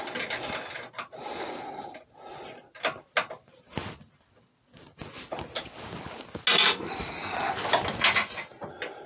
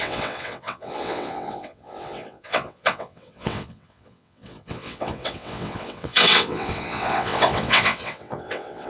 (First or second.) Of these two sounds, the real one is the first